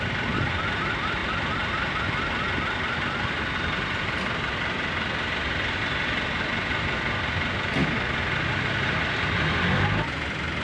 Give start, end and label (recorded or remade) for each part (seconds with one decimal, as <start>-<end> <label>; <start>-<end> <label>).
0.0-10.6 recorded